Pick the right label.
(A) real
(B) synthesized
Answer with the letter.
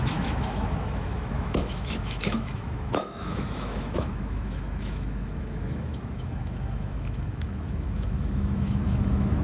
B